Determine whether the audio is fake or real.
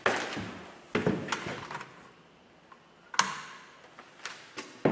real